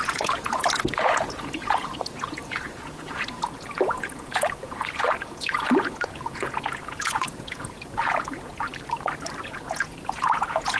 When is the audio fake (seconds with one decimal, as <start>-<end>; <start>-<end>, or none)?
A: 0.0-8.7; 9.4-10.8